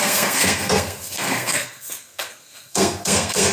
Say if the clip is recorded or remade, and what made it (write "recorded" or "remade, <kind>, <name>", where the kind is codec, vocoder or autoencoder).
remade, codec, SNAC